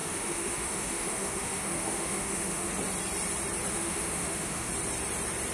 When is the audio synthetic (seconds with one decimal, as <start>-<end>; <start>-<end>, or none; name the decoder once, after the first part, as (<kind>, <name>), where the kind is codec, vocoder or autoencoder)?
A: 0.0-2.7 (autoencoder, DAC-VAE); 3.7-4.7